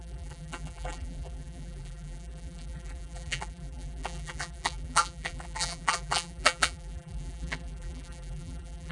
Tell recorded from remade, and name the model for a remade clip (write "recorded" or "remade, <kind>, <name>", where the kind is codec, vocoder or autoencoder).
remade, vocoder, BigVGAN v2